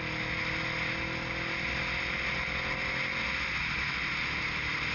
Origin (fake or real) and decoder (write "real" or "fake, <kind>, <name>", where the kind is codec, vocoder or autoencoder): real